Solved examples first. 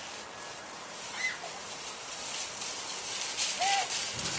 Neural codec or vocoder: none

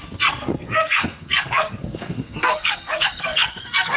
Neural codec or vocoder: codec, SNAC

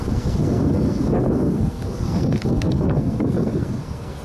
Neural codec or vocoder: codec, SNAC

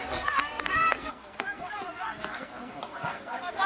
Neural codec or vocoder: codec, SNAC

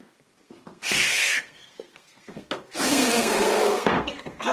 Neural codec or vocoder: codec, SNAC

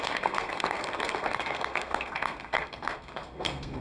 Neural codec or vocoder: codec, SNAC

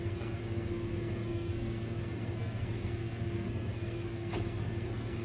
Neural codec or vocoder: codec, SNAC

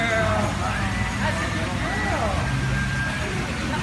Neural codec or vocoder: none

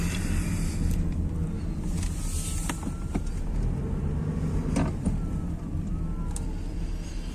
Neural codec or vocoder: none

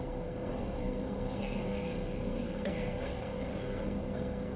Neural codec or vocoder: codec, SNAC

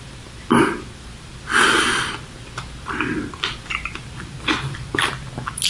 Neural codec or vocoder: none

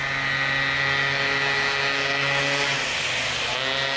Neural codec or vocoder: none